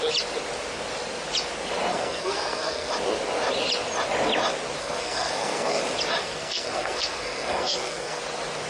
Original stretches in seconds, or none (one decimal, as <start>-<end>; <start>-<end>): 0.0-1.9; 2.9-4.8; 5.8-6.2; 8.2-8.7